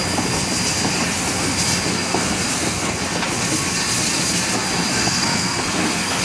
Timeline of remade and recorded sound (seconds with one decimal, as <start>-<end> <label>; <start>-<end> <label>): 0.0-1.9 recorded; 1.9-2.9 remade; 2.9-4.9 recorded; 4.9-6.2 remade